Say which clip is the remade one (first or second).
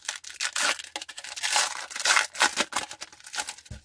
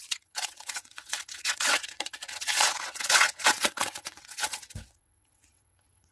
second